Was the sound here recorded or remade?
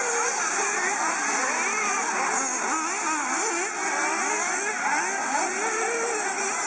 recorded